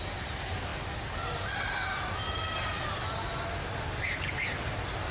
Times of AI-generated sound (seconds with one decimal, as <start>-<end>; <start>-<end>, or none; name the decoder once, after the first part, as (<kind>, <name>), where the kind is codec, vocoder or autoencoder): none